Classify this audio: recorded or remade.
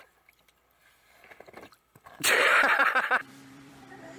remade